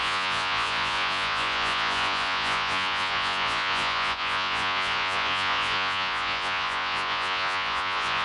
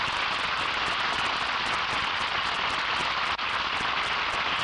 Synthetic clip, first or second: first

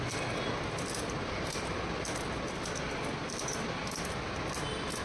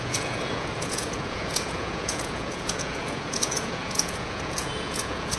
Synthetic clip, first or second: second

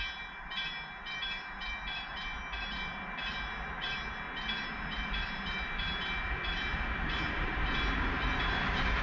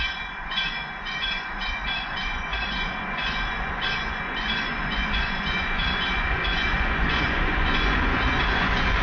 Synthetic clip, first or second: second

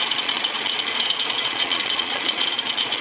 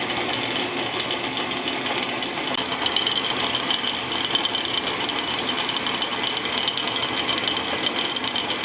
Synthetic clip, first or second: first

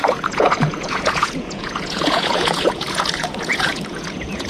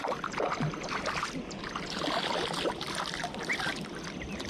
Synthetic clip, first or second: first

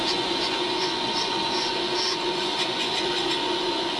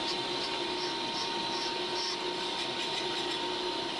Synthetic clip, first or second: first